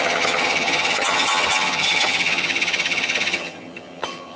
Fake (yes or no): yes